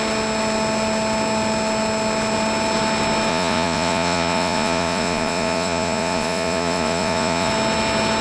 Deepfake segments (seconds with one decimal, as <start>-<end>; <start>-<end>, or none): 3.3-7.5